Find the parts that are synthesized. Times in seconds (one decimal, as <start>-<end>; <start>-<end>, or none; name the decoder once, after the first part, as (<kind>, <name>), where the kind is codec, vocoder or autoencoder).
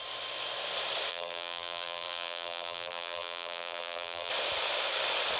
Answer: 1.1-4.3 (vocoder, BigVGAN v2)